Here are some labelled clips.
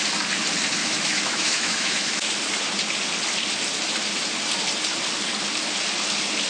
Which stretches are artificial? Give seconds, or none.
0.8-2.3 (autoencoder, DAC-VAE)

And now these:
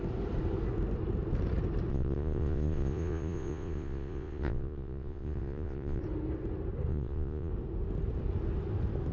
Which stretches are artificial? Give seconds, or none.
1.9-6.0 (vocoder, Vocos); 6.9-7.5